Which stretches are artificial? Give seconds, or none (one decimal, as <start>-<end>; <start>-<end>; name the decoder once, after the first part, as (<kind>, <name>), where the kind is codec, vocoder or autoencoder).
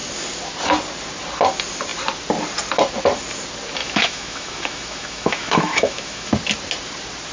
3.8-6.3 (autoencoder, DAC-VAE)